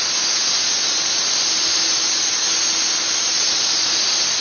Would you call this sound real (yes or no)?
yes